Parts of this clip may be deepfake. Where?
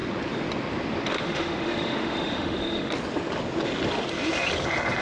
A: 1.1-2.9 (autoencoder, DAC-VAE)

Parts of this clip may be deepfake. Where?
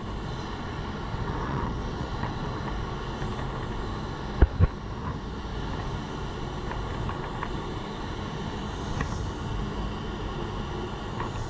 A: 1.1-2.6 (vocoder, WaveNeXt)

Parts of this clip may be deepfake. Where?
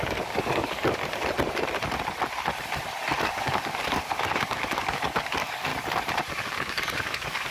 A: 0.0-1.0 (codec, DAC); 3.2-5.7; 6.3-7.5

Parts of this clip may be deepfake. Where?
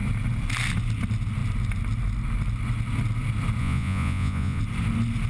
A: 3.6-4.6 (vocoder, Vocos)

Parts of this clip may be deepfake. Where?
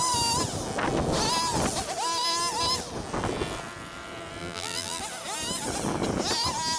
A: 4.4-5.0 (vocoder, BigVGAN v2)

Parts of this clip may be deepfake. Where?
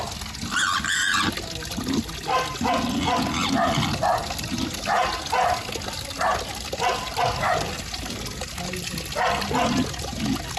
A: none